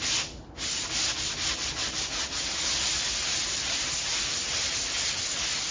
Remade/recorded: recorded